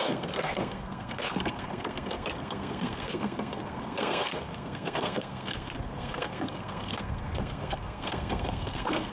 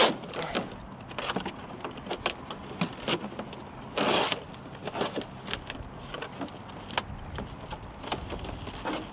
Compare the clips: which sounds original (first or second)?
second